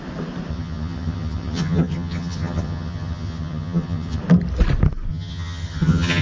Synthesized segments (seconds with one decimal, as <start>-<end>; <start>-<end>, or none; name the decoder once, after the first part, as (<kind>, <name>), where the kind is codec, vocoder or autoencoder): 0.5-4.2 (vocoder, HiFi-GAN); 5.1-6.2